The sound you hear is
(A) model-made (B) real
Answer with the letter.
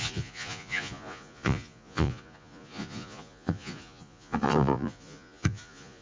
A